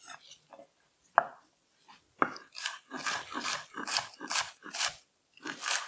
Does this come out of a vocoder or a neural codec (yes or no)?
no